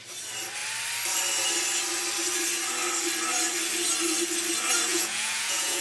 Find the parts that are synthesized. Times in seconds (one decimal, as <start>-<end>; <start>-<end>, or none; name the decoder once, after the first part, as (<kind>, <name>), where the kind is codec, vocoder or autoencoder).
4.9-5.8 (vocoder, Vocos)